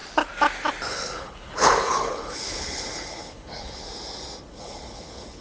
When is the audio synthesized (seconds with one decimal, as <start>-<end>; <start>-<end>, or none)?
0.9-3.8; 4.5-5.4